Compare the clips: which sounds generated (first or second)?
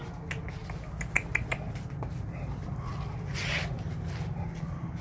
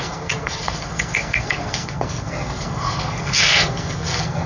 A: second